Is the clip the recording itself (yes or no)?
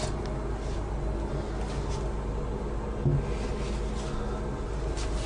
yes